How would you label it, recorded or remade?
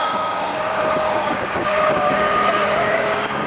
remade